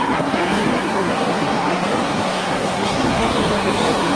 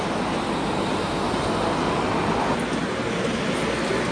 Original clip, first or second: second